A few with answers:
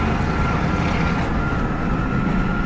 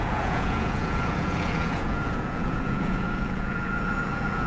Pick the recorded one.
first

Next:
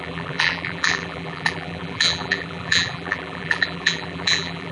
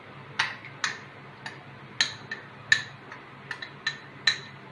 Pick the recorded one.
second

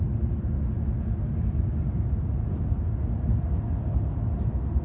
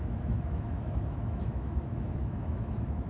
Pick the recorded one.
first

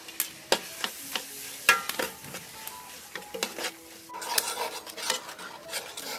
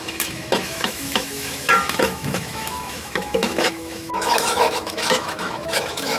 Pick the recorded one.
first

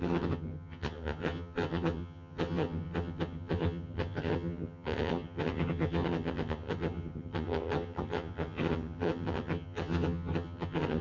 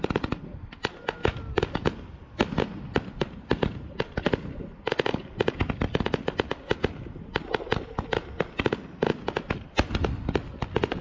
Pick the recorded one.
second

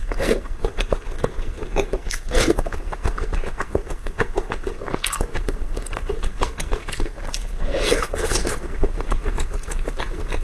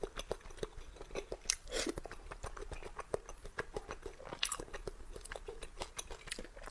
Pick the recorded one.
second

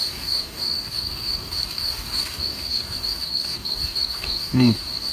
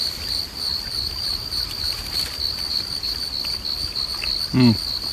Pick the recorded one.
second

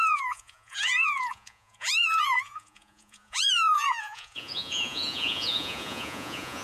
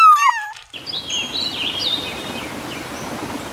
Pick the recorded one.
second